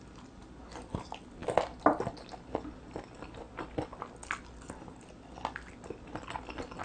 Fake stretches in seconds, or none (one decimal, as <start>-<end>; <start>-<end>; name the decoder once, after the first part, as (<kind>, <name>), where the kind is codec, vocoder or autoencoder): none

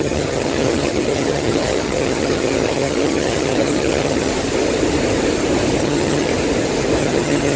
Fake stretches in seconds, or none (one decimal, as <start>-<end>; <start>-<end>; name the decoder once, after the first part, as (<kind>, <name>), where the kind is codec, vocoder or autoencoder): 0.0-4.3 (vocoder, HiFi-GAN); 5.8-6.3; 7.0-7.6

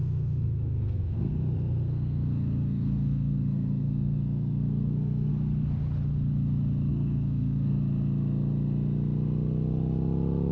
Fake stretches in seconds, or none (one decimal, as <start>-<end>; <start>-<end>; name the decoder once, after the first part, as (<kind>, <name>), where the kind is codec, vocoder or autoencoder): 0.0-5.3 (codec, SNAC); 6.9-7.8